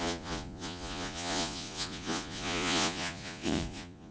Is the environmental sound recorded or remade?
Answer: remade